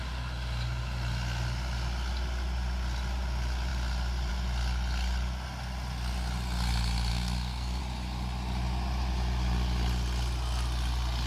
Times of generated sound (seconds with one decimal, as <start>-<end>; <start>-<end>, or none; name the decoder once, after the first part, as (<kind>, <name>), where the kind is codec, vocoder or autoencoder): 7.1-7.8 (codec, SNAC)